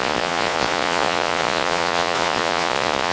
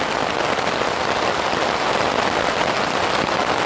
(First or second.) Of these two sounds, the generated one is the first